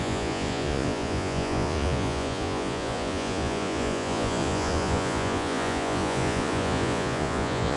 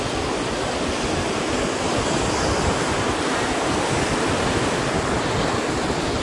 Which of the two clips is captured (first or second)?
second